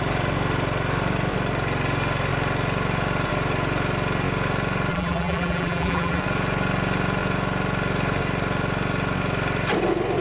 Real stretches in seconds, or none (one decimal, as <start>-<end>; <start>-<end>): 0.0-4.9; 6.2-10.2